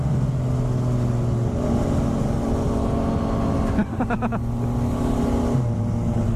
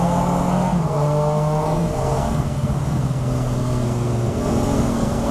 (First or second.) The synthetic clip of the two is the second